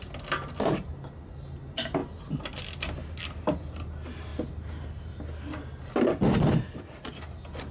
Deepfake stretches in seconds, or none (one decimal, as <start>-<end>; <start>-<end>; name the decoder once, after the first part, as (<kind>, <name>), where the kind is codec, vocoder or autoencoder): none